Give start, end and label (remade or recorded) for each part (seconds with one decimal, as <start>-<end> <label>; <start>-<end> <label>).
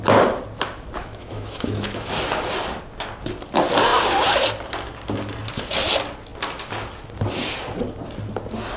0.0-1.0 recorded; 1.0-2.1 remade; 2.1-8.8 recorded